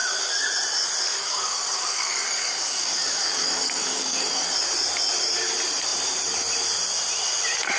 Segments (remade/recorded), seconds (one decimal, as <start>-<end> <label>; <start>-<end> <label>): 0.0-1.1 recorded; 1.1-4.5 remade; 4.5-7.8 recorded